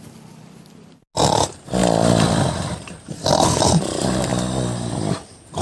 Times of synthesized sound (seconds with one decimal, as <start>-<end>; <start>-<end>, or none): none